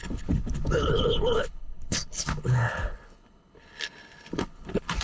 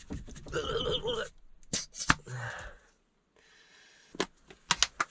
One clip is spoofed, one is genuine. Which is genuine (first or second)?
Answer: second